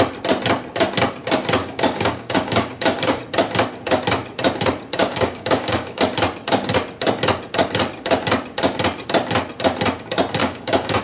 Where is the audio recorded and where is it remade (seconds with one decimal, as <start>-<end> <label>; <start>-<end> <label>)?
0.0-1.6 recorded; 1.6-3.2 remade; 3.2-5.0 recorded; 5.0-6.0 remade; 6.0-10.4 recorded; 10.4-11.0 remade